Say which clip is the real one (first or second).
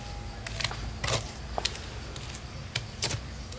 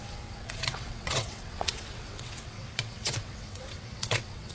first